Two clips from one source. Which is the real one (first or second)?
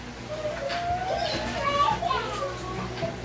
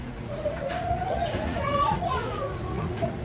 first